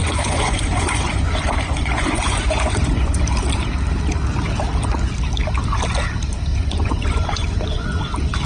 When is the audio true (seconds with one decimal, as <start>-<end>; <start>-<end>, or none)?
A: 3.2-6.5; 8.0-8.5